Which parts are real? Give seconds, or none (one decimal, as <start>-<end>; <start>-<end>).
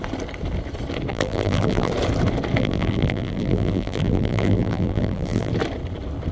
0.0-1.1; 1.9-2.6; 5.5-6.3